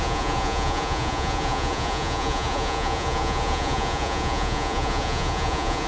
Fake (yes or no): yes